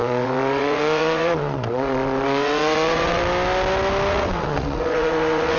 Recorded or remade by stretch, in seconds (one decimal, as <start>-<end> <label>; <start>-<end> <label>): 0.0-3.2 remade; 3.2-4.1 recorded; 4.1-5.6 remade